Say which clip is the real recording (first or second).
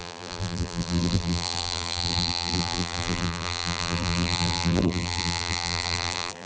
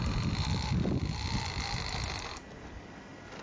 second